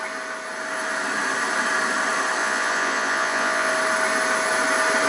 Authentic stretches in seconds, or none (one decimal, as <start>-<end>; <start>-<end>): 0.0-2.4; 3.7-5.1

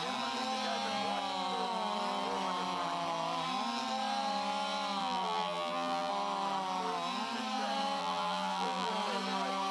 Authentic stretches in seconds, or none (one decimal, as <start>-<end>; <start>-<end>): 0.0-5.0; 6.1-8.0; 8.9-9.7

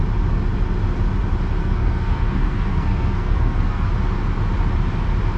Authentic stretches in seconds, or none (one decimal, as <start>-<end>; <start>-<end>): 0.0-1.6; 3.9-5.4

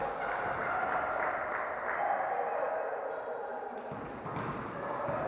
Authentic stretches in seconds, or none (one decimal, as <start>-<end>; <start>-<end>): 0.0-5.3

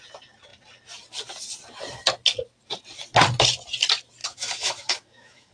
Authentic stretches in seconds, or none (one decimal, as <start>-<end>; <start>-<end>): 0.0-4.2

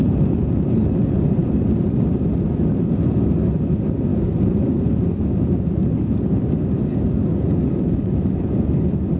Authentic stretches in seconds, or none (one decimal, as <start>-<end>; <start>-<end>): 0.0-4.1; 8.1-9.2

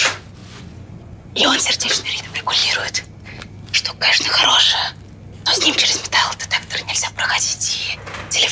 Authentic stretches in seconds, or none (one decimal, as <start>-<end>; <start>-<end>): 0.0-0.4; 2.2-8.5

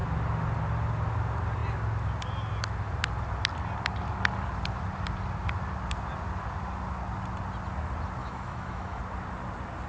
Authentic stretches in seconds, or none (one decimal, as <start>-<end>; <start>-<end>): 0.0-8.2; 9.0-9.9